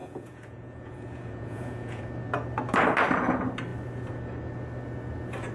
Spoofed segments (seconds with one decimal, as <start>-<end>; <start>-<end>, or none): 0.0-2.0